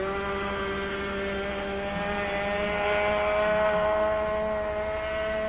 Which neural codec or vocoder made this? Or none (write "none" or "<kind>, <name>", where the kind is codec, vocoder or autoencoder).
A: none